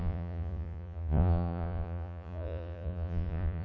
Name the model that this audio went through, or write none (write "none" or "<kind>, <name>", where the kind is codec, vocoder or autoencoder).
vocoder, Vocos